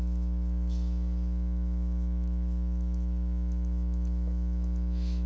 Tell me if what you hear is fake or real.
fake